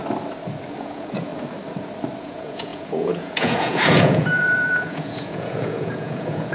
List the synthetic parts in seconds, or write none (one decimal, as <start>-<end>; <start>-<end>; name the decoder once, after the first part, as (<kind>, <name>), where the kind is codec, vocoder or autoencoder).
0.8-1.3 (vocoder, Vocos); 2.2-6.5